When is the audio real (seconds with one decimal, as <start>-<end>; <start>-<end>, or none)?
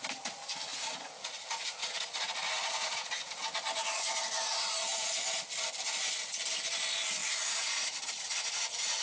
0.0-0.7; 3.2-7.2